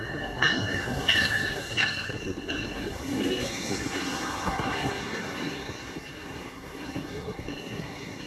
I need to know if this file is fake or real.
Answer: fake